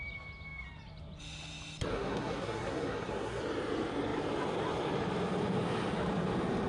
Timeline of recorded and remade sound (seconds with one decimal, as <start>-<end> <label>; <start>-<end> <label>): 0.0-1.9 recorded; 1.9-3.4 remade; 3.4-6.7 recorded